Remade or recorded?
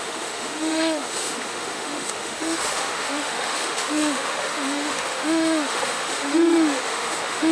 remade